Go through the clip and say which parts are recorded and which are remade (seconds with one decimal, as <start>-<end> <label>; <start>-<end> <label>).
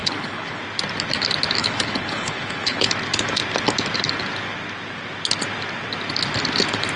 0.0-0.6 remade; 0.6-1.6 recorded; 1.6-2.9 remade; 2.9-7.0 recorded